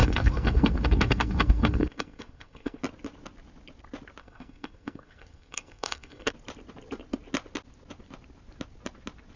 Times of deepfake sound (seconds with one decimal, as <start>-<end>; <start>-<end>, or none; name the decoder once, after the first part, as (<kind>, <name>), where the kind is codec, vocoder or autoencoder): 0.0-2.8 (codec, SNAC); 4.2-6.3